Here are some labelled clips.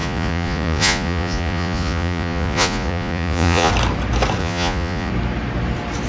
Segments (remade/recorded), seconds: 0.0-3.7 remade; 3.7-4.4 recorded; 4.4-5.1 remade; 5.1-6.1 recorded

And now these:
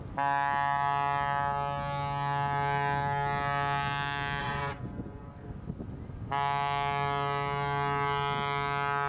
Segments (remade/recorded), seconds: 0.0-4.4 recorded; 4.4-5.3 remade; 5.3-9.1 recorded

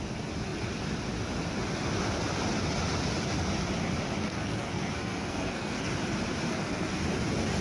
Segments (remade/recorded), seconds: 0.0-4.2 recorded; 4.2-5.9 remade; 5.9-6.5 recorded; 6.5-7.0 remade; 7.0-7.6 recorded

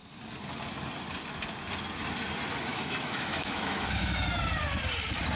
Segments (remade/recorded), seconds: 0.0-2.7 recorded; 2.7-4.4 remade; 4.4-5.4 recorded

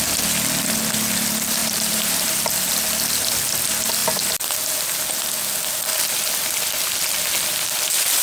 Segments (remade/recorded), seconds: 0.0-1.6 recorded; 1.6-2.5 remade; 2.5-8.2 recorded

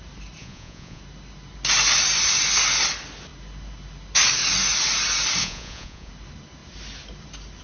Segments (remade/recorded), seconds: 0.0-0.4 recorded; 0.4-1.0 remade; 1.0-5.4 recorded; 5.4-6.1 remade; 6.1-7.6 recorded

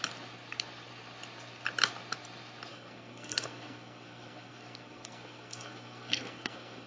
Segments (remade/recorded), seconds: 0.0-2.7 recorded; 2.7-6.9 remade